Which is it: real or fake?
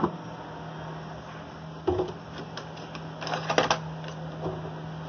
real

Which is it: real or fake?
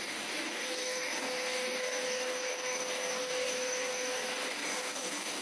fake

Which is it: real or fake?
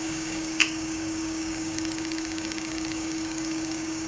fake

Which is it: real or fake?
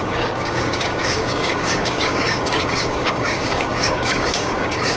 fake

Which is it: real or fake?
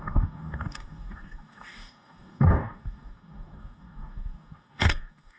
fake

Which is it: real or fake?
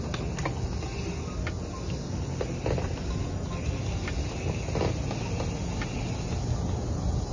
real